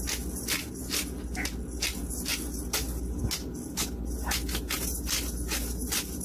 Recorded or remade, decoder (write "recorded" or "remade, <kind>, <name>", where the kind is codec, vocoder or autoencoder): recorded